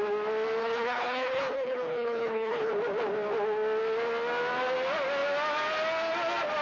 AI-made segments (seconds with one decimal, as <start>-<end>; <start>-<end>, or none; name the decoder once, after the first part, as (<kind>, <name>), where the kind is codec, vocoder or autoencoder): 0.6-2.7 (codec, HILCodec)